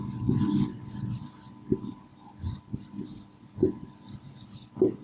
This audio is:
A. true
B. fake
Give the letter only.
A